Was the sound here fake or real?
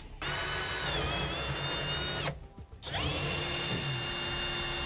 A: real